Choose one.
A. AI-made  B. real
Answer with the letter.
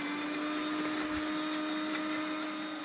B